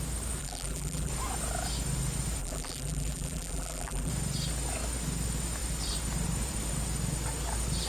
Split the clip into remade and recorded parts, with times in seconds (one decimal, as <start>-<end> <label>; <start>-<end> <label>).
0.0-0.4 recorded; 0.4-1.1 remade; 1.1-2.4 recorded; 2.4-4.1 remade; 4.1-7.9 recorded

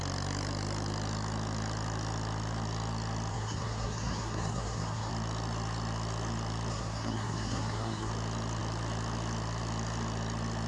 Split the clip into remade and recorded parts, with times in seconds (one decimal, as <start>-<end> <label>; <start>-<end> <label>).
0.0-3.3 recorded; 3.3-5.1 remade; 5.1-6.7 recorded; 6.7-8.1 remade; 8.1-10.7 recorded

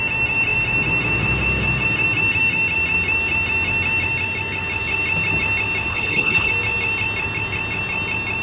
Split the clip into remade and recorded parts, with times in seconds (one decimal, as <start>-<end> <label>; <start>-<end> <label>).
0.0-5.9 recorded; 5.9-6.5 remade; 6.5-8.4 recorded

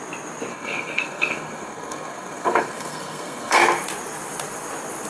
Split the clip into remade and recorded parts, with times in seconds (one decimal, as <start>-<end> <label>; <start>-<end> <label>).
0.0-0.5 recorded; 0.5-3.6 remade; 3.6-5.1 recorded

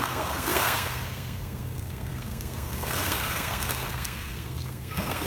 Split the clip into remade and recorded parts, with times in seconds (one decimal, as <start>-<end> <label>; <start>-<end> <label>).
0.0-5.3 remade

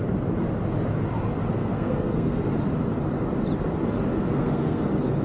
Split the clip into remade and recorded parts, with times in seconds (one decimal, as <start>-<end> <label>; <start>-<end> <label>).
0.0-1.6 recorded; 1.6-2.4 remade; 2.4-4.3 recorded; 4.3-4.8 remade; 4.8-5.2 recorded